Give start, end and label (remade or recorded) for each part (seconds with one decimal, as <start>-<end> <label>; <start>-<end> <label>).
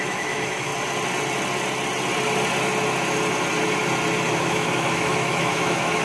0.0-0.7 remade; 0.7-4.3 recorded; 4.3-6.0 remade